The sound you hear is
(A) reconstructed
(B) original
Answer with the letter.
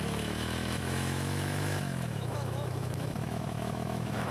A